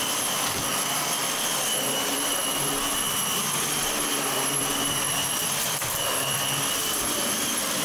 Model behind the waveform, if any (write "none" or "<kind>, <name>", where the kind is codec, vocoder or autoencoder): vocoder, BigVGAN v2